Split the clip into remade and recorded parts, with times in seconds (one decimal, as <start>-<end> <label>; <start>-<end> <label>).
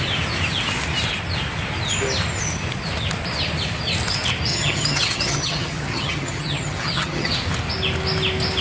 0.0-4.5 recorded; 4.5-7.3 remade; 7.3-8.6 recorded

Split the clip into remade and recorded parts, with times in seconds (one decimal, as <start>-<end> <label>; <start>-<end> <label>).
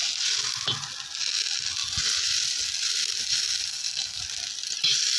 0.0-3.7 recorded; 3.7-4.2 remade; 4.2-5.2 recorded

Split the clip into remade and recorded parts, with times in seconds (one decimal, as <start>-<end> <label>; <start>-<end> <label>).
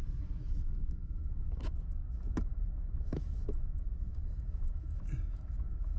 0.0-6.0 remade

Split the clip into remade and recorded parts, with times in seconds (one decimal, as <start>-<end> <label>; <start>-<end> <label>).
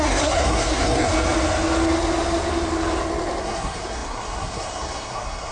0.0-1.1 remade; 1.1-3.4 recorded; 3.4-5.5 remade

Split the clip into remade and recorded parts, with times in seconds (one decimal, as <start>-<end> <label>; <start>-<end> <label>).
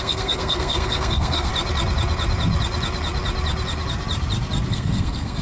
0.0-1.5 remade; 1.5-4.7 recorded; 4.7-5.4 remade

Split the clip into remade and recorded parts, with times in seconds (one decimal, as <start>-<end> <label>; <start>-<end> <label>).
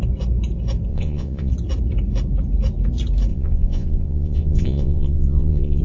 0.0-0.9 recorded; 0.9-1.5 remade; 1.5-3.3 recorded; 3.3-5.8 remade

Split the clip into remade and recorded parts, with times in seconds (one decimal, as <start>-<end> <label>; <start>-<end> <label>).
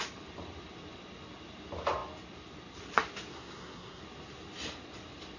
0.0-3.3 recorded; 3.3-4.0 remade; 4.0-5.4 recorded